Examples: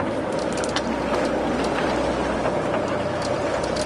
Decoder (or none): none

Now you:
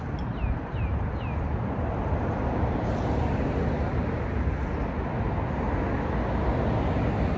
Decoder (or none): none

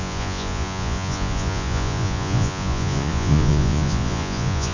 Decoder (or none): vocoder, Vocos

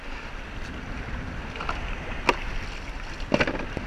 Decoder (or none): none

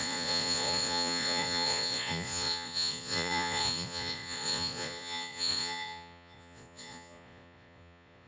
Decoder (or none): vocoder, Vocos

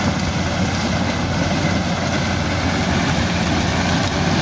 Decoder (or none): none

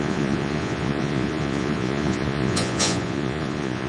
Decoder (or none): vocoder, Vocos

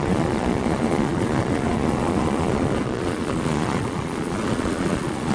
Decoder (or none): vocoder, Vocos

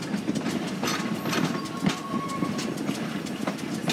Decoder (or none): none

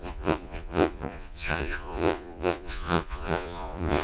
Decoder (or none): vocoder, Vocos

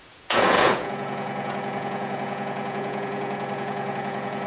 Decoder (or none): vocoder, Vocos